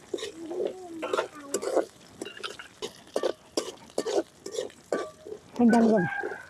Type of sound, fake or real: real